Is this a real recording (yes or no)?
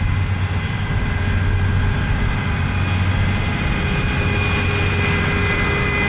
yes